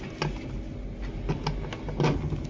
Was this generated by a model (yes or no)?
no